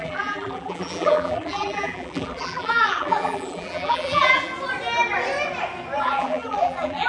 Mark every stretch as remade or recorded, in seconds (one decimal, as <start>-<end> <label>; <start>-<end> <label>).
0.0-4.5 remade; 4.5-6.0 recorded; 6.0-7.1 remade